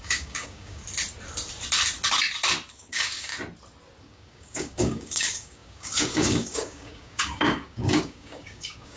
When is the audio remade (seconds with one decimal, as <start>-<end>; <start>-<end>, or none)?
0.0-0.8; 2.7-3.3; 4.0-9.0